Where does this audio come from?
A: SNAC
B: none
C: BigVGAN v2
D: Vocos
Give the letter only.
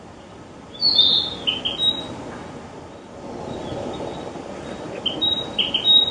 B